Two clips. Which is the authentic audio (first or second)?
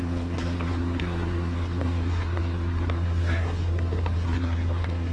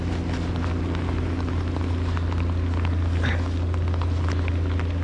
second